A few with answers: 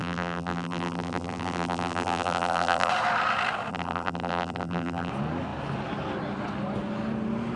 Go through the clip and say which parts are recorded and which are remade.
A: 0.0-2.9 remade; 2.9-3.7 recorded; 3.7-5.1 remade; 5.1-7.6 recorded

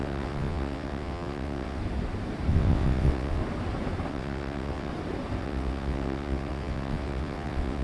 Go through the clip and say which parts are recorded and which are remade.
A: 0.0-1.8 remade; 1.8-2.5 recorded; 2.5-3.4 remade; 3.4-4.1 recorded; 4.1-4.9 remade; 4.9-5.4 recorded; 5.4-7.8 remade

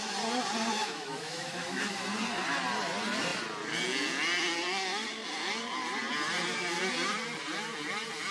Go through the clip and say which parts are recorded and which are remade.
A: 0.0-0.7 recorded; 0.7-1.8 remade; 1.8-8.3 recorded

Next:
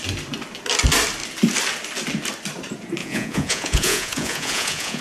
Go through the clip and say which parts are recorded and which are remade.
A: 0.0-3.0 recorded; 3.0-5.0 remade

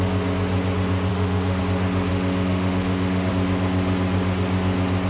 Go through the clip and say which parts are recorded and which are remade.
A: 0.0-1.1 recorded; 1.1-1.6 remade; 1.6-2.1 recorded; 2.1-3.3 remade; 3.3-5.1 recorded